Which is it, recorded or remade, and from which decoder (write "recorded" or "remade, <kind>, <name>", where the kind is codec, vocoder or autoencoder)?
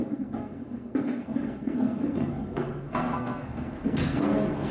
remade, codec, SNAC